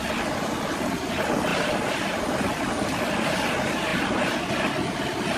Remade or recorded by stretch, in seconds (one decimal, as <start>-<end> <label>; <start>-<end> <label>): 0.0-5.4 recorded

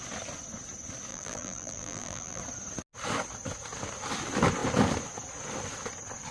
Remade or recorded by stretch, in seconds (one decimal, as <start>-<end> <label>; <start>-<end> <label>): 0.0-1.1 recorded; 1.1-2.4 remade; 2.4-6.3 recorded